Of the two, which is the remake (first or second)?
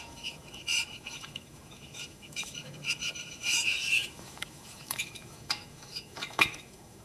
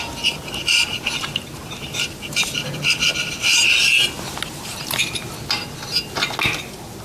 first